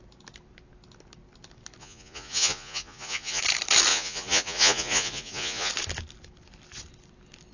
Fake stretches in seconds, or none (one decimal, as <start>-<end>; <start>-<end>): 1.8-3.4; 3.9-5.7